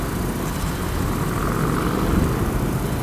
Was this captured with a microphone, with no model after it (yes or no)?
yes